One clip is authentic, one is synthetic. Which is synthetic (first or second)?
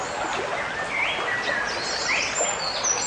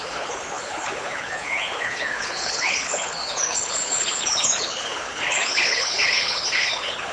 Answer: second